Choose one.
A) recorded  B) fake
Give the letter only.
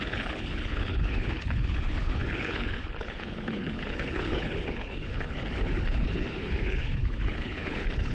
B